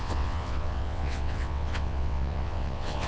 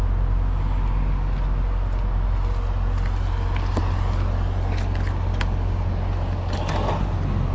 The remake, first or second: first